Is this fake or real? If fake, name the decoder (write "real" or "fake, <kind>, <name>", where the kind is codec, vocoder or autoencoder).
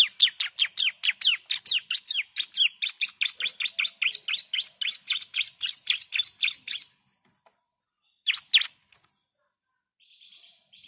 real